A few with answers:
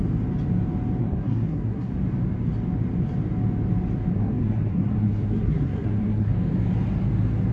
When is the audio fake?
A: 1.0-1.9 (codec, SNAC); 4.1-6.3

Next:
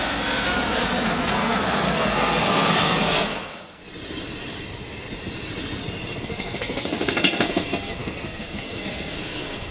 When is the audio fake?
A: 0.0-3.8 (codec, SNAC); 6.2-9.7

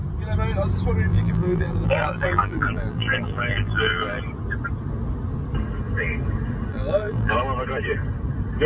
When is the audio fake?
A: 1.1-4.2 (vocoder, BigVGAN v2); 6.7-7.3